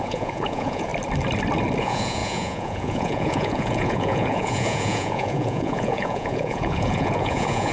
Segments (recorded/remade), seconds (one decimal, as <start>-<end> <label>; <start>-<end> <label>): 0.0-0.9 remade; 0.9-1.8 recorded; 1.8-7.7 remade